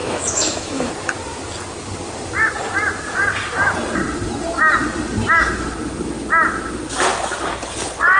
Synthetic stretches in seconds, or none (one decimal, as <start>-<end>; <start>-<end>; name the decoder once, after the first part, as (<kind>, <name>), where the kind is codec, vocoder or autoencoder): 0.0-0.9 (autoencoder, DAC-VAE)

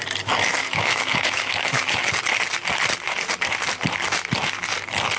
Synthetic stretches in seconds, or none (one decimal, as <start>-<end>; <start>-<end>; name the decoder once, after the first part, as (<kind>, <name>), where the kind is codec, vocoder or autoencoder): 0.6-2.2 (autoencoder, DAC-VAE)

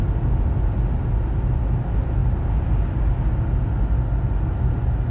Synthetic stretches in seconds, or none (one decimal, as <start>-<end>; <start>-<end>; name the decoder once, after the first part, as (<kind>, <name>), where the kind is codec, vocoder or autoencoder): none

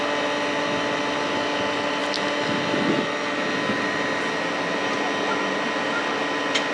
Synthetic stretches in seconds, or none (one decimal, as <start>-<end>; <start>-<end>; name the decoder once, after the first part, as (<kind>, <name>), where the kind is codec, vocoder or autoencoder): none